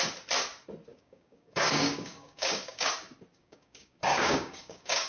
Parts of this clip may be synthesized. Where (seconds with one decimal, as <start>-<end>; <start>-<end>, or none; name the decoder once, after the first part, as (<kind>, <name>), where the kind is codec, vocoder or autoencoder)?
0.9-2.9 (codec, DAC); 3.4-5.1